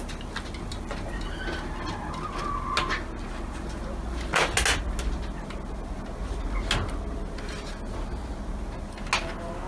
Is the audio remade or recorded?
recorded